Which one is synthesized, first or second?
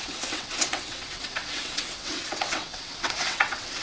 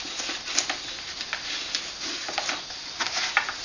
first